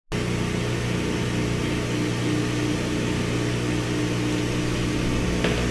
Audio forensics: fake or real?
real